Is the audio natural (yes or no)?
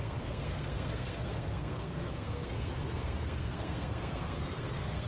no